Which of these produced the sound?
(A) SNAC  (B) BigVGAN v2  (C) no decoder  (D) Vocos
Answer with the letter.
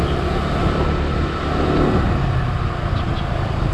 C